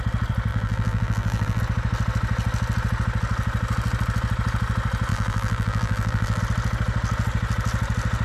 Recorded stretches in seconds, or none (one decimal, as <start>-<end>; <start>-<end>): 0.0-0.5; 1.6-5.1; 6.4-8.2